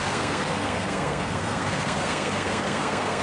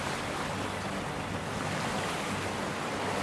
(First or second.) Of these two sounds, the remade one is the first